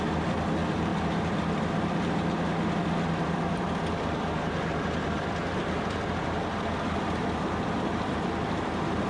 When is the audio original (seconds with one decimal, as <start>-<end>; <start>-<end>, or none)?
none

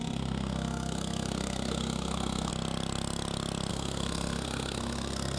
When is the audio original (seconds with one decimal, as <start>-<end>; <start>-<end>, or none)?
2.5-3.7

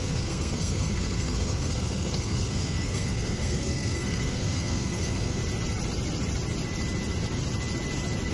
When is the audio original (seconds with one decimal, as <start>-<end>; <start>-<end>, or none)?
5.4-8.3